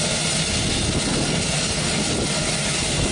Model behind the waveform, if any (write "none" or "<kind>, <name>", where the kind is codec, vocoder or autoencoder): none